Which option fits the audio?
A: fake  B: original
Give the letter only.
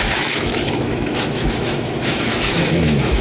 A